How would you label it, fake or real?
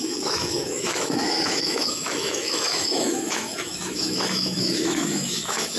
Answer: fake